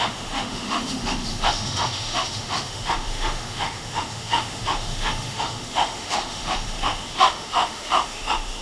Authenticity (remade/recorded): remade